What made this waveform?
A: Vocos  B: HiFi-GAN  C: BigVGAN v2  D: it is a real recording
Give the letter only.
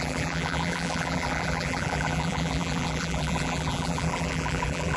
C